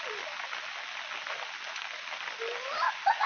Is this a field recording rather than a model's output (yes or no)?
yes